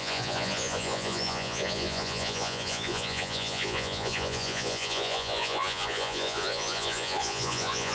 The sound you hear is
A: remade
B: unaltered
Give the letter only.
A